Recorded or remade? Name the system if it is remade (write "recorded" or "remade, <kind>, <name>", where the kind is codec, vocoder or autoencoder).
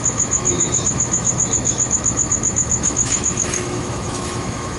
remade, autoencoder, DAC-VAE